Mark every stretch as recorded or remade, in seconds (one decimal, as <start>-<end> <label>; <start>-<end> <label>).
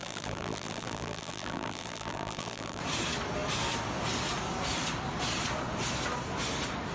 0.0-2.8 remade; 2.8-6.9 recorded